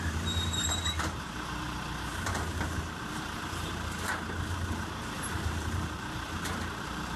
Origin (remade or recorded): remade